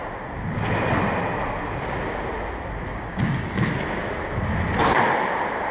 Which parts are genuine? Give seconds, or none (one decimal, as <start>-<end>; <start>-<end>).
0.0-2.9; 3.7-5.7